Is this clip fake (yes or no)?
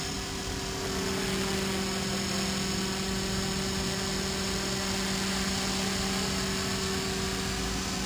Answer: no